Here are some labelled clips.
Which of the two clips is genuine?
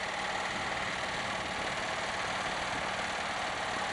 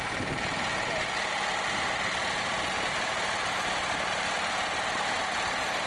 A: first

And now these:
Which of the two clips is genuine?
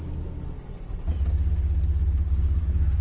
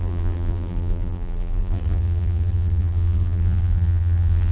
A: first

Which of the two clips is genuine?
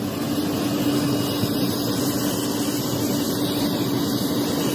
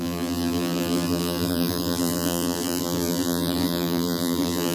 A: first